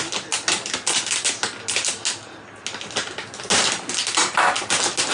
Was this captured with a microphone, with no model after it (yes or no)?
yes